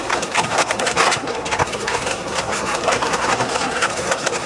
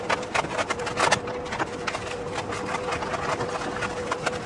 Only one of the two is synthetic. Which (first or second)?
first